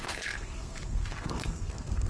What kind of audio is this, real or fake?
fake